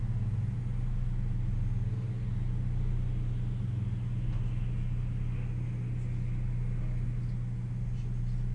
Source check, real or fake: real